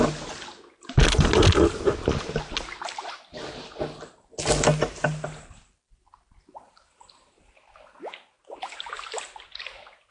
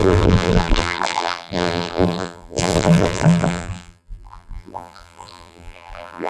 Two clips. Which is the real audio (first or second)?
first